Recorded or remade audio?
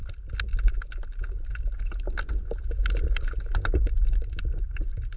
recorded